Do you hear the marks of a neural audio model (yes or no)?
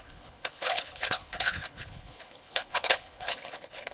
yes